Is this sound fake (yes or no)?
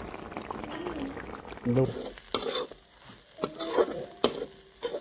no